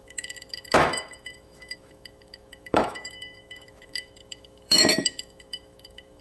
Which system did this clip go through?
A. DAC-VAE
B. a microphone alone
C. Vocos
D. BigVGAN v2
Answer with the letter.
A